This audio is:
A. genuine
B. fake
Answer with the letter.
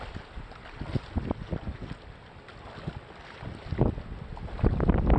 A